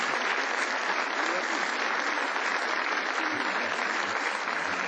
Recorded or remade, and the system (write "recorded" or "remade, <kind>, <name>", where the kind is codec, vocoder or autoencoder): recorded